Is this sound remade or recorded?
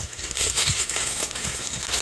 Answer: remade